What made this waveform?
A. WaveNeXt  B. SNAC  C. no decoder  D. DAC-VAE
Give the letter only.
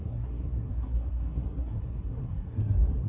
B